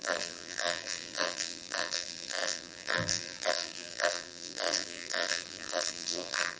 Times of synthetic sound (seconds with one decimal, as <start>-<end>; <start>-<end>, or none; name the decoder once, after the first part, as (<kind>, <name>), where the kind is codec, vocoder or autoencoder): 0.0-6.6 (vocoder, BigVGAN v2)